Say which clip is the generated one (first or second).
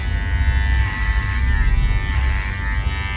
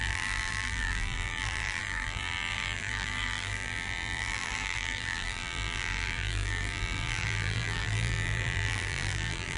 second